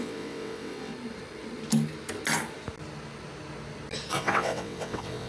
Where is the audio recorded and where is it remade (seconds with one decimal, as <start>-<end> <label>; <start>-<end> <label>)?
0.0-0.9 remade; 0.9-4.1 recorded; 4.1-5.3 remade